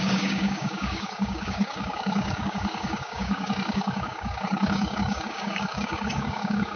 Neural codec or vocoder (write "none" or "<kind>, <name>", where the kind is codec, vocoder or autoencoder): codec, DAC